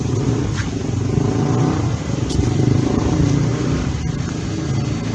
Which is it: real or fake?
real